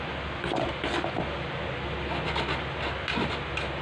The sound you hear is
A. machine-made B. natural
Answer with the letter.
B